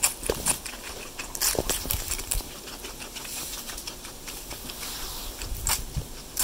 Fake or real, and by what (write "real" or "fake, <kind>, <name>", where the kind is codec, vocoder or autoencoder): fake, vocoder, BigVGAN v2